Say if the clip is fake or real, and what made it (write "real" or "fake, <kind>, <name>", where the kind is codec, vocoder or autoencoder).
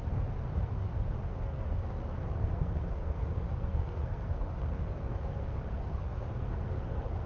fake, codec, SNAC